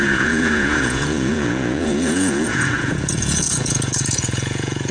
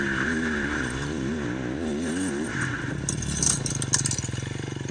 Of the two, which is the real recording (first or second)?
second